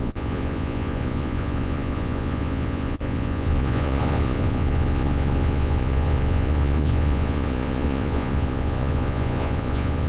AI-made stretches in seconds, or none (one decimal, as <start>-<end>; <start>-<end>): 0.0-10.1